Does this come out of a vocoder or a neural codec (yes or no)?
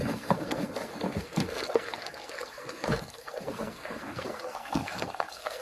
yes